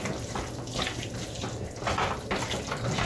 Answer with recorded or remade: recorded